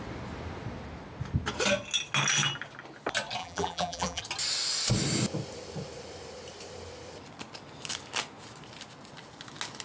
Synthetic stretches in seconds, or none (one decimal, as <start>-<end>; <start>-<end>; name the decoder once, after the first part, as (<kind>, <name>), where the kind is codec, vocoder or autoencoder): 3.4-4.2 (vocoder, BigVGAN v2)